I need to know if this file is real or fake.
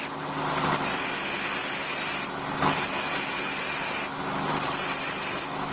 real